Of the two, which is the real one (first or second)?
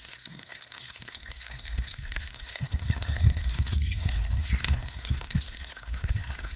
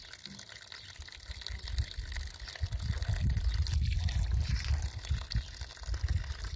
second